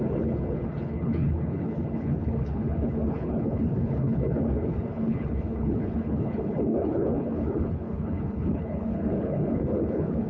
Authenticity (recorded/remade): remade